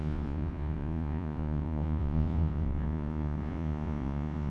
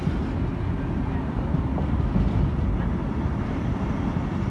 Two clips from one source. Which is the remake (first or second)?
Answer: first